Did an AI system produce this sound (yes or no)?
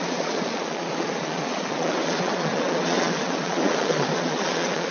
yes